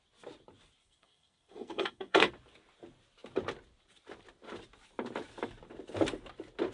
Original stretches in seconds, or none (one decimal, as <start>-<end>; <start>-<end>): 0.0-0.8; 2.3-6.7